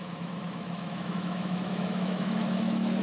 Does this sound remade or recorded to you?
remade